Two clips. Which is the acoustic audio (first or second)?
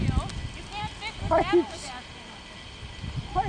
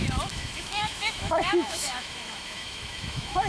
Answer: first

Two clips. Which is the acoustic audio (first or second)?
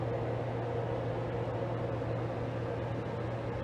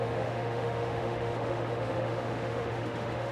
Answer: first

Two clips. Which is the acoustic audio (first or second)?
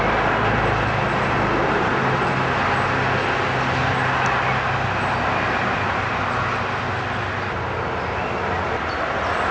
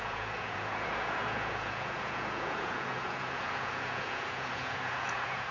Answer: first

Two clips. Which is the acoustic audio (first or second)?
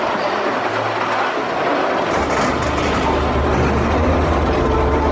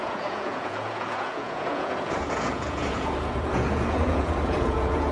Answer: first